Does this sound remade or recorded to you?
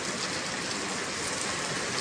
recorded